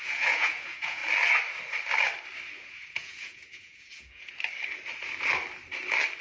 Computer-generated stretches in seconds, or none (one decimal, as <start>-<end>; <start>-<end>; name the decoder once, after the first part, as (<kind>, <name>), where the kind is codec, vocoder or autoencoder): 0.0-1.0 (vocoder, Vocos); 2.6-4.3